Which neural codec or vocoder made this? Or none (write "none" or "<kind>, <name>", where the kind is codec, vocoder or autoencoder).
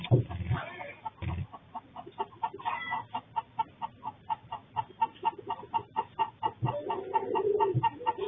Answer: none